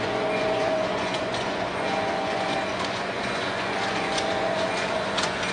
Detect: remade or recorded remade